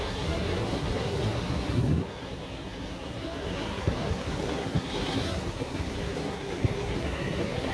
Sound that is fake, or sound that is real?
fake